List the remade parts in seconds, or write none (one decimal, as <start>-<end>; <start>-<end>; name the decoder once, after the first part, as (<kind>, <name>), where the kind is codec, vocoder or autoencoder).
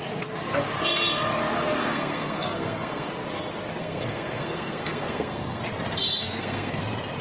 1.8-3.1 (codec, SNAC); 3.8-5.6; 6.2-6.8